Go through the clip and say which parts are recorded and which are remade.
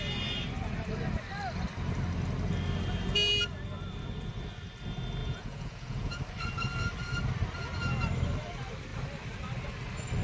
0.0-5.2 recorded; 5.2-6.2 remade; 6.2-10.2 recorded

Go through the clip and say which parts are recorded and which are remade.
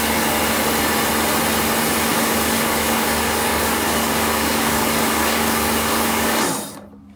0.0-2.1 recorded; 2.1-6.4 remade; 6.4-7.2 recorded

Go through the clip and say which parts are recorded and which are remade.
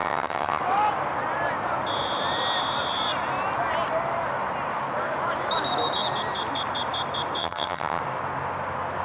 0.0-0.6 remade; 0.6-7.4 recorded; 7.4-8.0 remade; 8.0-9.0 recorded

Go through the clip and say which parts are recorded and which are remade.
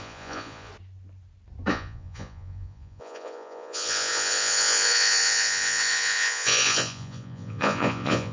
0.0-0.7 remade; 0.7-1.7 recorded; 1.7-8.3 remade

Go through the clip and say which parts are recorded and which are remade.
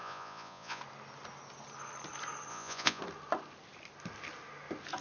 0.0-0.8 remade; 0.8-2.5 recorded; 2.5-3.0 remade; 3.0-5.0 recorded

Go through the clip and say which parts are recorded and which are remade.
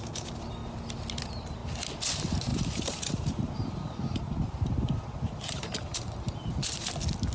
0.0-2.5 recorded; 2.5-6.6 remade; 6.6-7.3 recorded